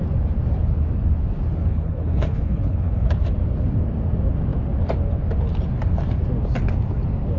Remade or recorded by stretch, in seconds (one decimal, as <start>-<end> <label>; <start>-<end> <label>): 0.0-1.7 recorded; 1.7-3.1 remade; 3.1-7.4 recorded